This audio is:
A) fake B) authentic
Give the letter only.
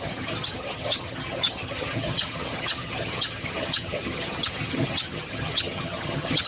A